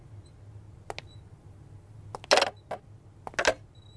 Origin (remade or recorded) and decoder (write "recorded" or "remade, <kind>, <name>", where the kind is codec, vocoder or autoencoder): recorded